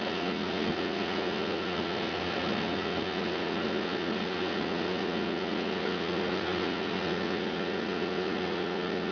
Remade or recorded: remade